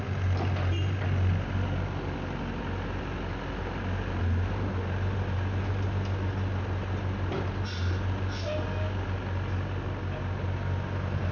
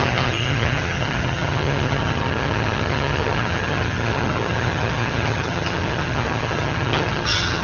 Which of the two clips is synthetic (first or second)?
second